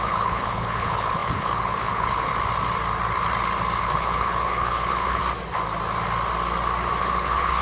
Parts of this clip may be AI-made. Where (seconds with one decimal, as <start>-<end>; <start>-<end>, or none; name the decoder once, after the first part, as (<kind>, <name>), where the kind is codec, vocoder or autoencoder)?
0.0-2.3 (codec, HILCodec); 3.8-5.2; 7.0-7.6